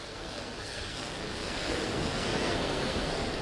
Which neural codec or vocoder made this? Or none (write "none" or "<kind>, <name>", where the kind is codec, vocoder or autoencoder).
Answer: codec, SNAC